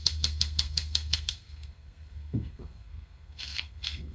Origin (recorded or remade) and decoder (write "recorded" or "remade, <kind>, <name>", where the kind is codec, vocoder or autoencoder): remade, codec, SNAC